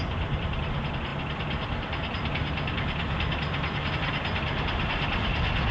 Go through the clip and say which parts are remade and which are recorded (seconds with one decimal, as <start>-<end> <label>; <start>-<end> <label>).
0.0-5.7 recorded